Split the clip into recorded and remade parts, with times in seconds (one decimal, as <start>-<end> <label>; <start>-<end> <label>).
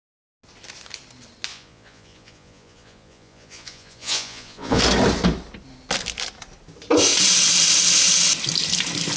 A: 0.0-1.5 recorded; 1.5-4.8 remade; 4.8-9.2 recorded